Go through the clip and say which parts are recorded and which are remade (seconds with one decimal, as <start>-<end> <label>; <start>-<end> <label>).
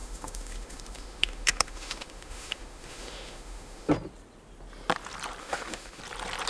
0.0-3.9 remade; 3.9-5.4 recorded; 5.4-6.0 remade; 6.0-6.5 recorded